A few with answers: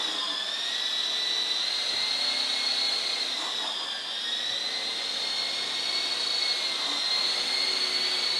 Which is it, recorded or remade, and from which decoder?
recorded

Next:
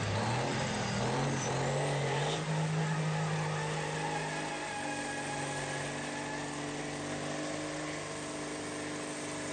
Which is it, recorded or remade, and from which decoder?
recorded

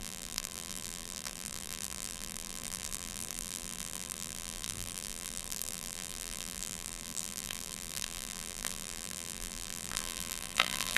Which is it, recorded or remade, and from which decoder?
remade, vocoder, BigVGAN v2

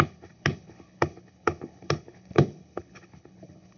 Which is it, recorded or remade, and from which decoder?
remade, codec, HILCodec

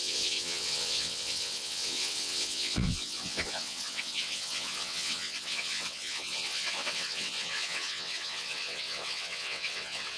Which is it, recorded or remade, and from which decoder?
remade, vocoder, WaveNeXt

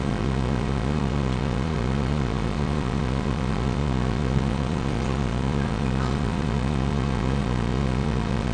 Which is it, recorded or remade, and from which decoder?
remade, vocoder, Vocos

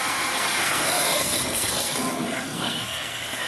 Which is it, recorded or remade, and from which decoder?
remade, codec, SNAC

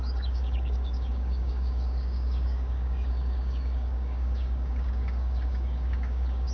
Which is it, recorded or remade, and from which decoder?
remade, codec, DAC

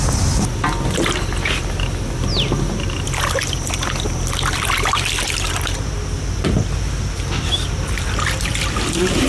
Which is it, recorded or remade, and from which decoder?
recorded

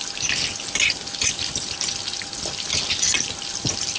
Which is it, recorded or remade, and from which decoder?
recorded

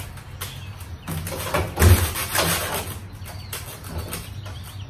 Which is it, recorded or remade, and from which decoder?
recorded